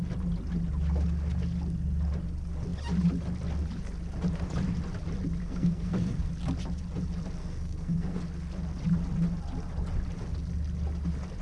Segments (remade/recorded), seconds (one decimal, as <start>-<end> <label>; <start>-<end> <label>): 0.0-5.4 recorded; 5.4-6.3 remade; 6.3-7.4 recorded; 7.4-8.2 remade; 8.2-11.4 recorded